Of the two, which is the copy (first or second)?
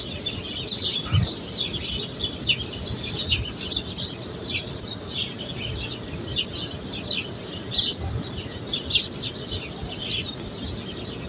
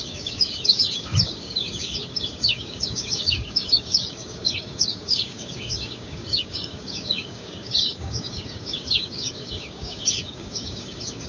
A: second